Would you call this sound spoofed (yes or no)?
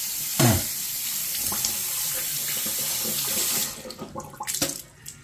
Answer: no